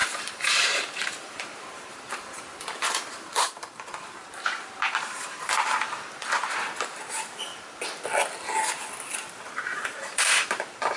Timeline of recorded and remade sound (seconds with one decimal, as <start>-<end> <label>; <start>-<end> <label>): 0.0-7.5 remade; 7.5-9.3 recorded; 9.3-11.0 remade